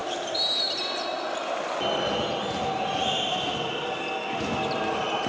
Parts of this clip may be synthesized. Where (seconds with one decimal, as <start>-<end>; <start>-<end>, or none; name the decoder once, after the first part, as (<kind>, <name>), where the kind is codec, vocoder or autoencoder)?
none

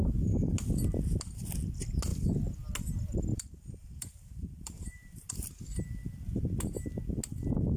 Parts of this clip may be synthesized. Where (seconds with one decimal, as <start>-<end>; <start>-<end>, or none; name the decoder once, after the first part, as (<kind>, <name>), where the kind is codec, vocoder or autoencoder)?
3.3-5.3 (vocoder, BigVGAN v2)